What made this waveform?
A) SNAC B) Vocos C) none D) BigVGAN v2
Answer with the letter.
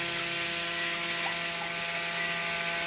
C